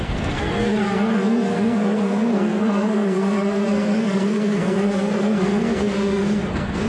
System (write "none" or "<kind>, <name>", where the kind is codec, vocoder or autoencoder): codec, SNAC